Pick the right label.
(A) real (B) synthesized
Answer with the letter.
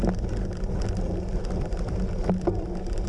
A